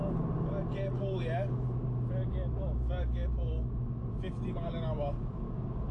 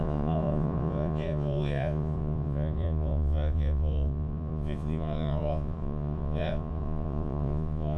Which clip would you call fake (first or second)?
second